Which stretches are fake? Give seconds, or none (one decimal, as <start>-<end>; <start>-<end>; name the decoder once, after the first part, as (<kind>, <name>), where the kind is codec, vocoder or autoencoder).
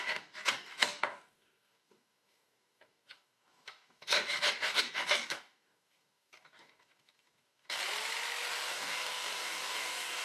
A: 0.0-7.8 (codec, DAC); 8.7-10.2